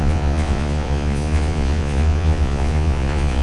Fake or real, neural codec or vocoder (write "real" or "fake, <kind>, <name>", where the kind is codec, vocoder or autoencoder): fake, vocoder, Vocos